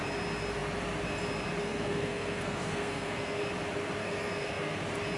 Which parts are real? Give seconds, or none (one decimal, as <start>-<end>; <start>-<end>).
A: 0.0-1.6; 3.4-4.0; 4.8-5.2